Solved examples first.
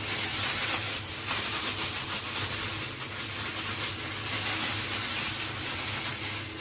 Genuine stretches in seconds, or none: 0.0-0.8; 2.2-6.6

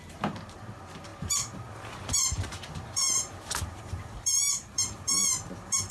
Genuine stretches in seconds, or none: none